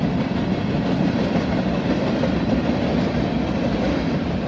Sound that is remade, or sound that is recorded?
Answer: recorded